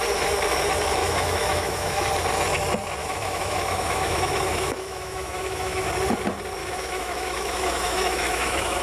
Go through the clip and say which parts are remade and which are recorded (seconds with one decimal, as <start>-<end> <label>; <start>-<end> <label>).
0.0-1.0 recorded; 1.0-2.1 remade; 2.1-3.0 recorded; 3.0-5.9 remade; 5.9-6.6 recorded; 6.6-8.8 remade